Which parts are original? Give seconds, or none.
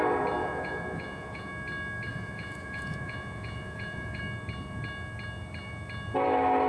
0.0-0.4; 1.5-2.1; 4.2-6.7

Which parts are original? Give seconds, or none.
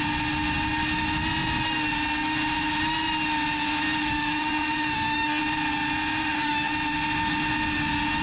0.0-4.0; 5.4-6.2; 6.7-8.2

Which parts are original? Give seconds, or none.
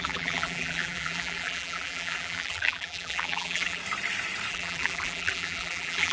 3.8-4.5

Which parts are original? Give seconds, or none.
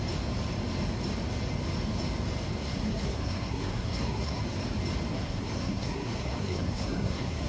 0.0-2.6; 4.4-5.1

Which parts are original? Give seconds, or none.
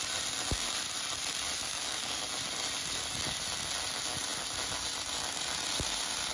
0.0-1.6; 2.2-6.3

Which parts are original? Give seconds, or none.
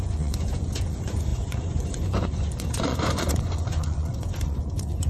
none